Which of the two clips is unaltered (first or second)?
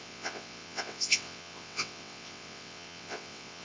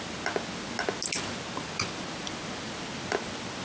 second